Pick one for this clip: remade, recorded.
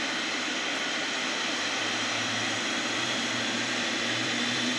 remade